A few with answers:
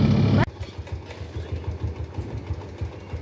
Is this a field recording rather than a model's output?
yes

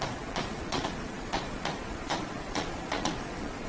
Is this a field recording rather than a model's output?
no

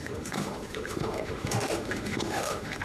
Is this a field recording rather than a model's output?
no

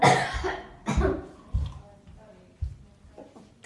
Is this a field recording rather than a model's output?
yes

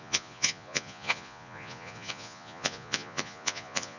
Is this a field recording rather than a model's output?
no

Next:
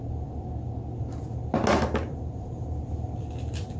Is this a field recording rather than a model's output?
yes